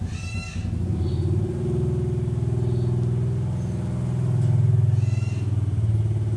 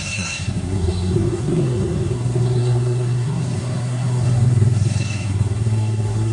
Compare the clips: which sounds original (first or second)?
first